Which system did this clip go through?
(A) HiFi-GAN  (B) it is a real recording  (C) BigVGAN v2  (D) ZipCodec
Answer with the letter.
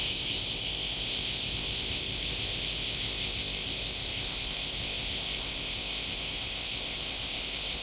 D